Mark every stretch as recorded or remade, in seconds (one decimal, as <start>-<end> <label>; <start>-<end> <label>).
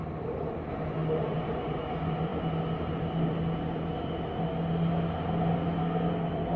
0.0-5.8 recorded; 5.8-6.6 remade